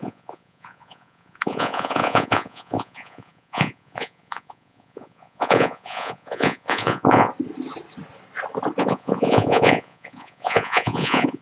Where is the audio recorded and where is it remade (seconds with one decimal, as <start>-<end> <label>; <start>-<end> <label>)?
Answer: 0.0-7.3 remade; 7.3-8.8 recorded; 8.8-11.4 remade